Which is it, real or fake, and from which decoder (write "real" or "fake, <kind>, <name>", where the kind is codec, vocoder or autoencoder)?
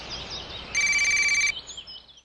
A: real